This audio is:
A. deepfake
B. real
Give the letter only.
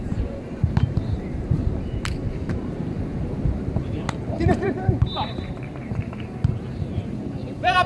A